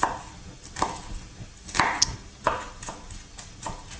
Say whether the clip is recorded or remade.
recorded